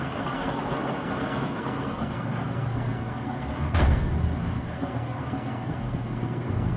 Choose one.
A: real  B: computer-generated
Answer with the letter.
B